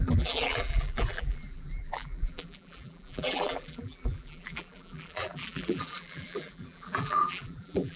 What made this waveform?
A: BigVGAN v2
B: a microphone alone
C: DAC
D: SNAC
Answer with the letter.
A